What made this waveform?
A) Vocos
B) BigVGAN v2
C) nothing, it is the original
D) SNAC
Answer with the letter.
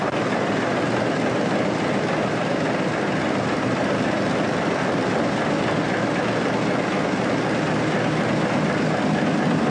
C